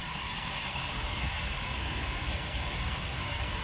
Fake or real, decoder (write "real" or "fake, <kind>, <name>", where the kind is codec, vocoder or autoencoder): fake, codec, SNAC